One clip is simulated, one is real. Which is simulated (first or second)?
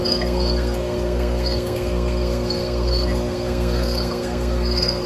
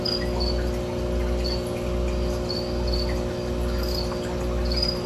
first